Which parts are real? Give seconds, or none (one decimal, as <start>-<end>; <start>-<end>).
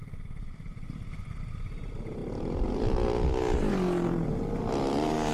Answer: 0.0-5.3